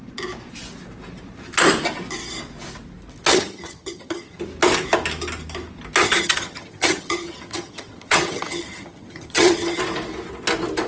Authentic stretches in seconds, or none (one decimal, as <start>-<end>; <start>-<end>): 0.0-3.3; 4.4-6.0; 9.8-10.9

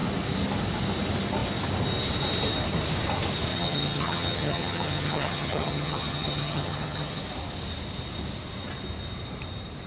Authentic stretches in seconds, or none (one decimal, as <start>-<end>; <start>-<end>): 0.0-3.5; 7.2-9.9

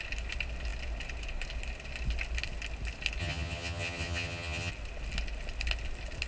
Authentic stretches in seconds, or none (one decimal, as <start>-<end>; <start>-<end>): 0.0-3.2; 4.7-6.3

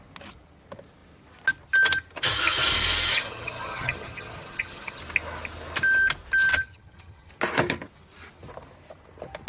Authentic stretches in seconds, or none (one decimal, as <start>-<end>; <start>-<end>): 0.0-3.1; 5.0-6.5; 7.3-9.5